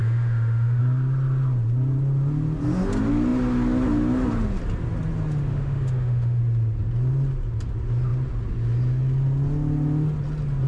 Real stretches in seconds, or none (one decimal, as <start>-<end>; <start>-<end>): 0.8-5.5; 6.4-10.7